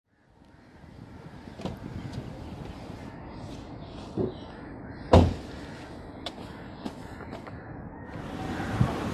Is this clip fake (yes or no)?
no